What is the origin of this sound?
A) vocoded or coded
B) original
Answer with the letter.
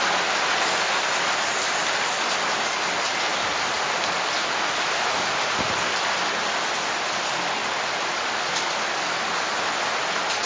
A